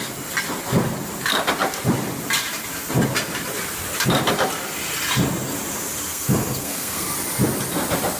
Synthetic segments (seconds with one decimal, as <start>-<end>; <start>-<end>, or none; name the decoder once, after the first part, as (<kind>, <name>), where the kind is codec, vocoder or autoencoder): 6.1-7.1 (codec, SNAC)